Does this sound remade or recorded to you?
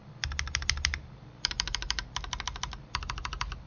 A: recorded